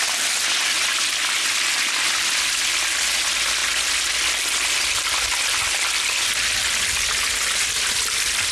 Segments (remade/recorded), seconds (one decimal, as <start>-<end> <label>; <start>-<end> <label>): 0.0-8.5 recorded